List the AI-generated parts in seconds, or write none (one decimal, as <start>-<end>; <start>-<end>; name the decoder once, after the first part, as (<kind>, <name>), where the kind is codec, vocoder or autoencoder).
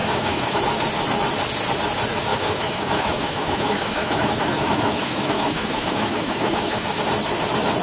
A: 0.0-0.6 (autoencoder, DAC-VAE); 2.3-7.0